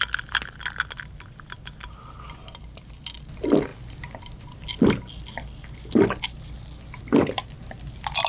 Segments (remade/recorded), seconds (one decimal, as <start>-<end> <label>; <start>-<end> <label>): 0.0-8.3 recorded